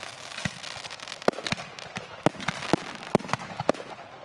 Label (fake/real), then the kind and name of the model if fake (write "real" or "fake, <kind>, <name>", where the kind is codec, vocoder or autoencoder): real